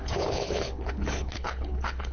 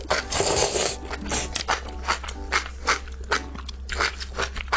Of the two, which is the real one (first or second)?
second